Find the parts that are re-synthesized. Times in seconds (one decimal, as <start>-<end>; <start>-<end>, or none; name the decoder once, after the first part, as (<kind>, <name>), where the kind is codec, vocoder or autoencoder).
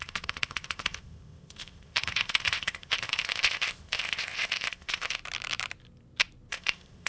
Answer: 0.0-5.2 (codec, ZipCodec); 6.5-7.1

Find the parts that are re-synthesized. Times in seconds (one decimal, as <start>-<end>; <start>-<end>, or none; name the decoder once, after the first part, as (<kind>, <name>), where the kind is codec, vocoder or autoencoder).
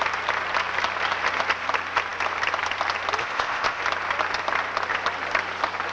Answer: 3.2-3.8 (codec, ZipCodec)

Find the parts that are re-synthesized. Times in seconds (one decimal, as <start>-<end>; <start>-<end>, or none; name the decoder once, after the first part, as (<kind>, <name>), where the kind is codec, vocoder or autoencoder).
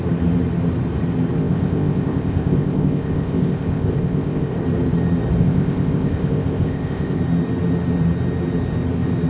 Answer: 1.4-4.5 (codec, ZipCodec); 5.4-7.2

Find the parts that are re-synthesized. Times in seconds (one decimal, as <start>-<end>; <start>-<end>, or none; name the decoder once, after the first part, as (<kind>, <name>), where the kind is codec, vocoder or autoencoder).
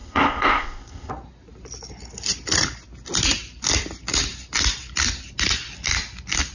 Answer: 0.0-1.1 (codec, ZipCodec)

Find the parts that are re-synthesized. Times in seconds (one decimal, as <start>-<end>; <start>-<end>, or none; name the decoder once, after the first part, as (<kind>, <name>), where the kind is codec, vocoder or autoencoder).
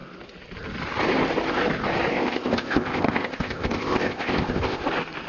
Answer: 2.1-4.8 (codec, ZipCodec)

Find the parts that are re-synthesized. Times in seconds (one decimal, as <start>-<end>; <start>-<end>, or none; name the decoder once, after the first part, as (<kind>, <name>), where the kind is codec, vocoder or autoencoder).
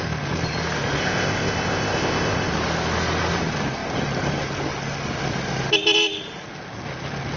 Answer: 1.0-2.5 (codec, ZipCodec)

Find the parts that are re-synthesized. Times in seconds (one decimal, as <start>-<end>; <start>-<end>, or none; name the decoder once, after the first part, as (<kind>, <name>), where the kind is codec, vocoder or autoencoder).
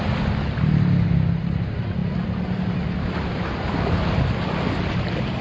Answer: none